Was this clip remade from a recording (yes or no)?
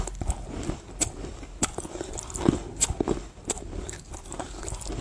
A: no